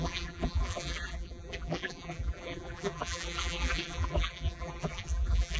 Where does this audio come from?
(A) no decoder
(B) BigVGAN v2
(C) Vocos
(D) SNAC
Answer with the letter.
B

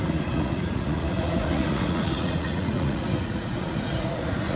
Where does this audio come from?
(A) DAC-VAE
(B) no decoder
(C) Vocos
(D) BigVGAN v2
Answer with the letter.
C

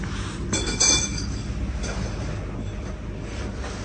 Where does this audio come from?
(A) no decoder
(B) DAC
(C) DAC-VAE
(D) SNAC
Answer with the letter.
A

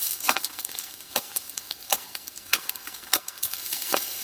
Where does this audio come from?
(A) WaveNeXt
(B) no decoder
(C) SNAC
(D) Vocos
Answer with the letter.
C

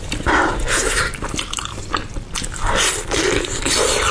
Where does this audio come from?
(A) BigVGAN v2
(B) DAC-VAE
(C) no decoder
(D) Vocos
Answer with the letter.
C